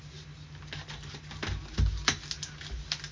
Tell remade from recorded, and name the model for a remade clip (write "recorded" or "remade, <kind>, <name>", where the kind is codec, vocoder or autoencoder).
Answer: recorded